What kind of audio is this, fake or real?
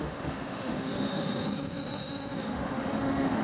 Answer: fake